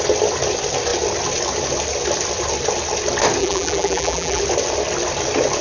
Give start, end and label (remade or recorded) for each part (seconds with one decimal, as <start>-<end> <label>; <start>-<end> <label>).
0.0-3.4 recorded; 3.4-4.4 remade; 4.4-5.6 recorded